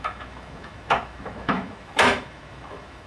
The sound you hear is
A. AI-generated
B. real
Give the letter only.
A